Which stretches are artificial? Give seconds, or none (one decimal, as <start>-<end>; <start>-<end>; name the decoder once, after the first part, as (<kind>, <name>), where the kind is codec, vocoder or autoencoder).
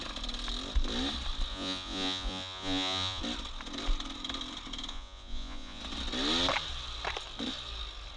1.5-3.2 (vocoder, Vocos); 4.9-5.8